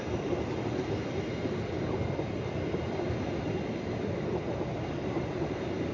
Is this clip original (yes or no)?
yes